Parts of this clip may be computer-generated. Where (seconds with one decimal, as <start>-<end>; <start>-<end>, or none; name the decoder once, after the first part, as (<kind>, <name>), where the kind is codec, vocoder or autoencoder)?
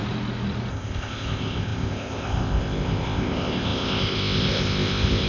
0.7-5.3 (codec, ZipCodec)